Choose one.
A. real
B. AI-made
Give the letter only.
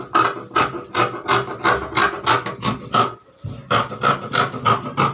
A